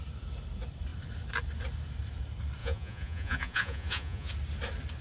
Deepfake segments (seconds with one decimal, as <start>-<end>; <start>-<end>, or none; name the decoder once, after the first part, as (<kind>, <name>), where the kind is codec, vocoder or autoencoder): 2.6-4.3 (vocoder, Vocos)